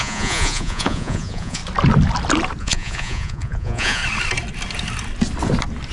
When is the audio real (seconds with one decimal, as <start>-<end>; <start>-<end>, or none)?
1.6-2.6; 4.0-5.9